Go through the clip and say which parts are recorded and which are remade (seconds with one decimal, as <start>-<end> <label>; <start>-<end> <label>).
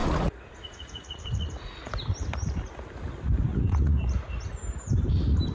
0.0-1.9 remade; 1.9-3.5 recorded; 3.5-4.5 remade; 4.5-5.5 recorded